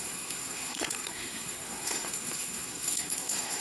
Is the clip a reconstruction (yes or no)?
yes